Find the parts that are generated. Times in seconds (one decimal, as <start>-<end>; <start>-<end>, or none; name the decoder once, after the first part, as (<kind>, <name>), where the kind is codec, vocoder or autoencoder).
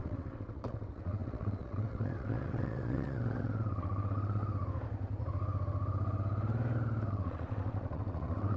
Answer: 0.0-4.4 (vocoder, WaveNeXt); 7.1-8.6